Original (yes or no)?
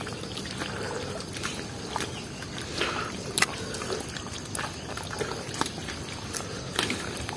yes